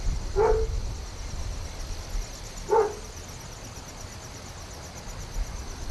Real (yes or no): yes